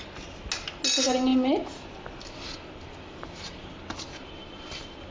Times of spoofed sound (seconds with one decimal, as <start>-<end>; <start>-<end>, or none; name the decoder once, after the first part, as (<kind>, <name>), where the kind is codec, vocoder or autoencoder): none